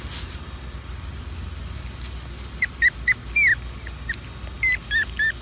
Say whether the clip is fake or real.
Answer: real